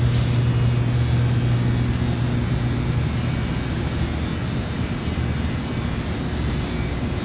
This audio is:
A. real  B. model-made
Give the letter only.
A